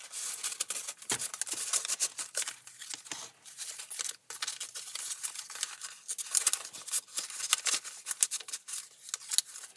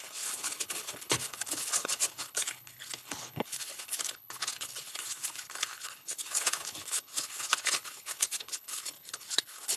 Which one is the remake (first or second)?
second